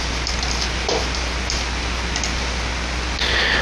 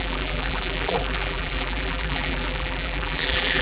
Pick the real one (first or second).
first